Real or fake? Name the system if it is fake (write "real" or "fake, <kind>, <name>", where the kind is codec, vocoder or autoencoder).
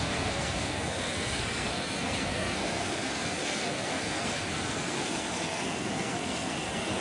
fake, codec, SNAC